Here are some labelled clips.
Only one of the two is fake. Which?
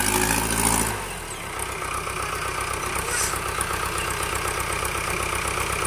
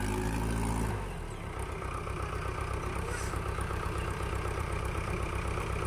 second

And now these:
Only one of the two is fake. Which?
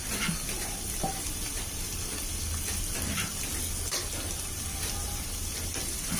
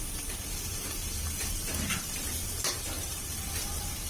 second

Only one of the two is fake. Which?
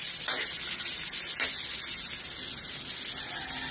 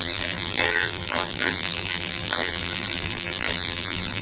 second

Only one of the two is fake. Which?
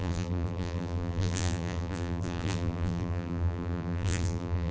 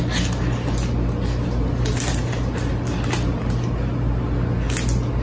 first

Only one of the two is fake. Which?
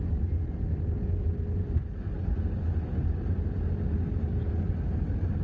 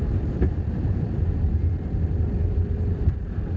second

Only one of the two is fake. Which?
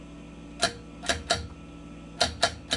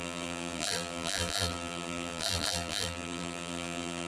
second